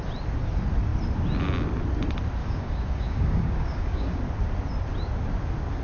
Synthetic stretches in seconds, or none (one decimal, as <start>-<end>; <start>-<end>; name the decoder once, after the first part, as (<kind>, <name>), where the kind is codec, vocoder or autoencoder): 2.4-4.2 (codec, DAC)